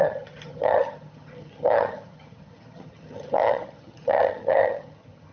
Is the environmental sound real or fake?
fake